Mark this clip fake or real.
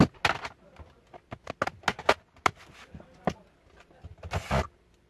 real